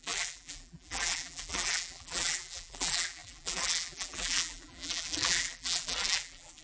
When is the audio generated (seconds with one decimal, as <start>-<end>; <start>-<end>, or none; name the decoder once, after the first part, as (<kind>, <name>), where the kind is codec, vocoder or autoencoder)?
0.0-6.6 (vocoder, BigVGAN v2)